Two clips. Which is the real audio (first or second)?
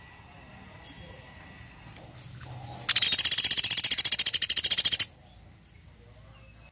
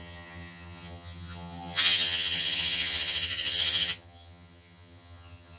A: first